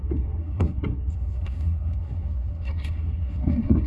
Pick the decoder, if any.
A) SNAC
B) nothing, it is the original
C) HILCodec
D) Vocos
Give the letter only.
A